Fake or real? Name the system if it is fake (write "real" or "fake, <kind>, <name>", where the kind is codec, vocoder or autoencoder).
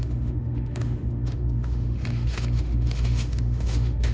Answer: fake, autoencoder, DAC-VAE